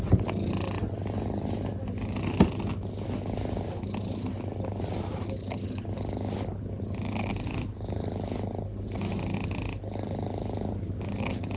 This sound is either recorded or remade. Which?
recorded